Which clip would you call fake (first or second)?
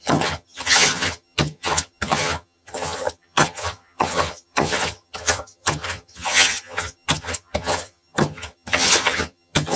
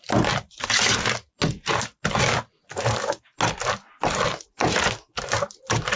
first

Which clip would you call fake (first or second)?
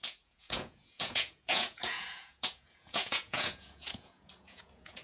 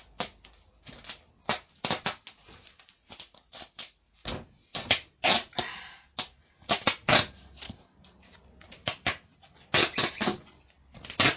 first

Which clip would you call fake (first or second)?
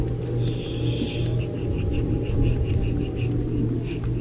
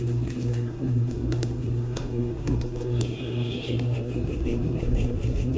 second